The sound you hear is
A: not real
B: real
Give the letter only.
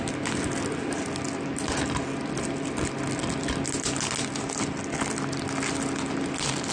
B